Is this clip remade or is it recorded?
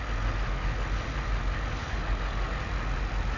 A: recorded